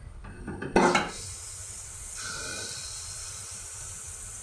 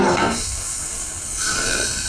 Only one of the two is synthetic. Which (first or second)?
second